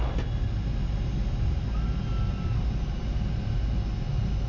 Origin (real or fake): real